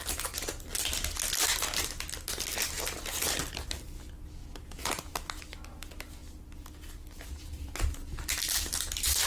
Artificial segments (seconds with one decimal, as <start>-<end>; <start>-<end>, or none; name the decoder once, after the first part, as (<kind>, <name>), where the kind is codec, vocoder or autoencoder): 4.4-5.1 (vocoder, Vocos)